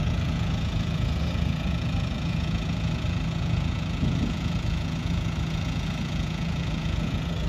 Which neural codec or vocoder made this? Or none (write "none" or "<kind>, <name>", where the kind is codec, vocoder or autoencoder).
vocoder, Vocos